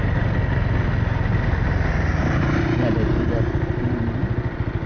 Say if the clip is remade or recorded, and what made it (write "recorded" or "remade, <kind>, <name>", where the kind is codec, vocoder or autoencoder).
recorded